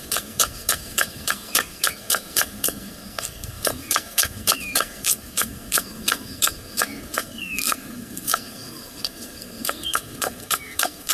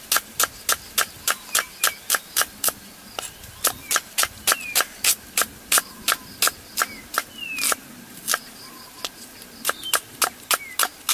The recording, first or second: second